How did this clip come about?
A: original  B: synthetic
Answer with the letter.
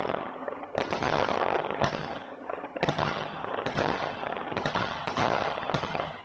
B